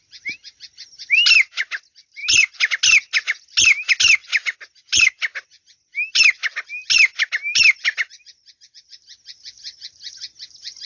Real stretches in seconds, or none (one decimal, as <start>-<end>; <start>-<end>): 0.0-10.8